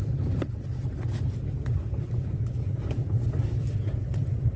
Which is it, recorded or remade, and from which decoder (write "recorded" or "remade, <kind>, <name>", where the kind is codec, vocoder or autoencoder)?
recorded